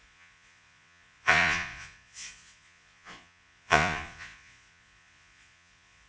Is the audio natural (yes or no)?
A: no